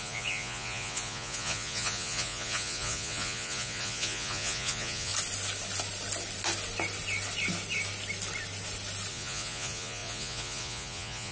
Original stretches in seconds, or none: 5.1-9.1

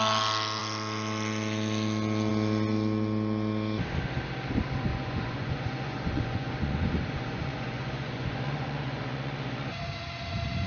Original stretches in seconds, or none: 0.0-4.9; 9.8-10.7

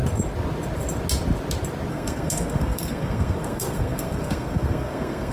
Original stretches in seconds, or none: 0.0-1.9

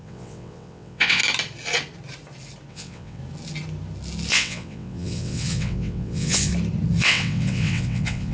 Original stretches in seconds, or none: 1.2-2.7; 3.2-4.3; 6.5-7.0